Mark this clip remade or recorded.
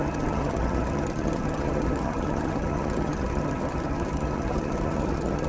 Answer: remade